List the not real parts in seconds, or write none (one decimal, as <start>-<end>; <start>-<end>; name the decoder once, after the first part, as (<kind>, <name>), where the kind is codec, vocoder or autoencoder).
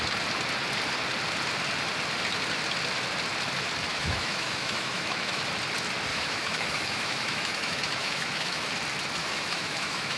3.9-5.4 (autoencoder, DAC-VAE); 6.1-8.7; 9.2-10.2